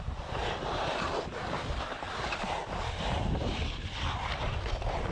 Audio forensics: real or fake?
real